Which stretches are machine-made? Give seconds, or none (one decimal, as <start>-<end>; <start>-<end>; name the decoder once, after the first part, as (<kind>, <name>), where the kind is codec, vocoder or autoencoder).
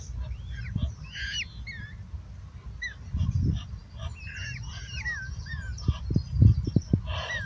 none